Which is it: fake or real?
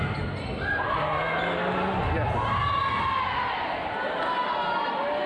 real